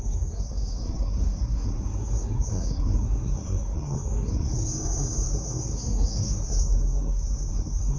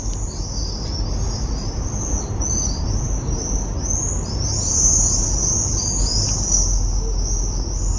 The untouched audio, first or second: second